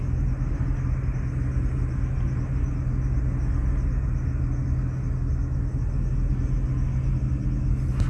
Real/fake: real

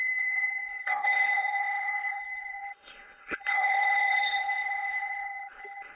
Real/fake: fake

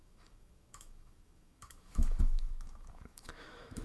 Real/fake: fake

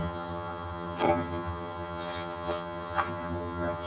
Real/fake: fake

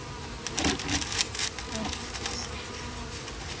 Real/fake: real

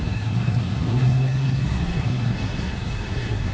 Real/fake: fake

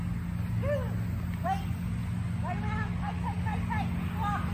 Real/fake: real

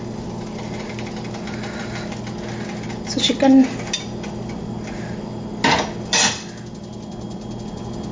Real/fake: real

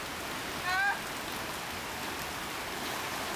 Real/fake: real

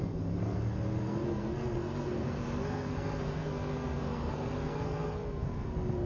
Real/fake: fake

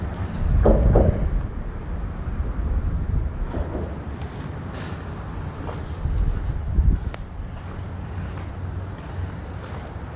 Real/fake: real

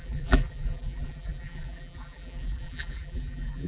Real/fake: fake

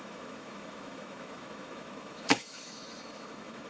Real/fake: fake